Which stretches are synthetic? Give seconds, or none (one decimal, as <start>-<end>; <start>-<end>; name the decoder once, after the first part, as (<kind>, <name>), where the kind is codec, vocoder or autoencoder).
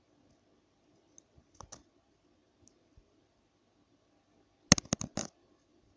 none